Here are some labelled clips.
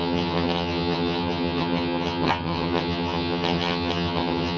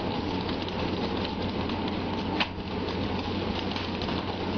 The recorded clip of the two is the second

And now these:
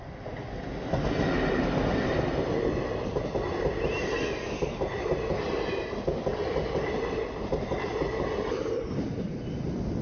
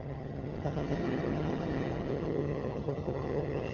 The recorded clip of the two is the first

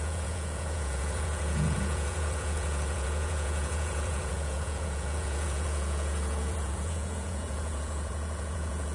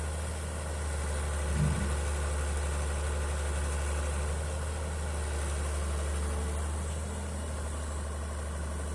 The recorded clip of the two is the second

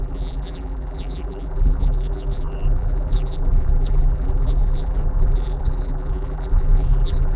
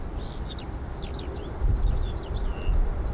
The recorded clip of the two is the second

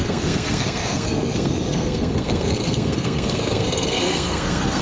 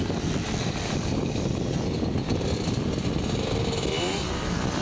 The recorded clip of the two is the second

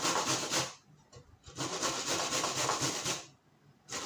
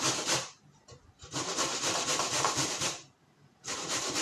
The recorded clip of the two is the first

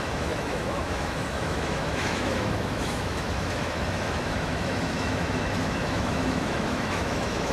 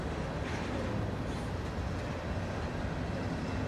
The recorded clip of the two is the second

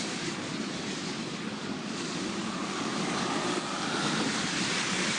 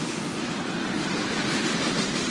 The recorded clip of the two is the second